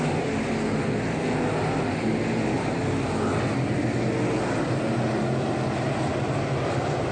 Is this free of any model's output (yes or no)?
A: yes